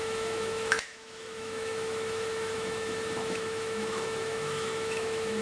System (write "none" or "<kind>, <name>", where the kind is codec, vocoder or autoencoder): autoencoder, DAC-VAE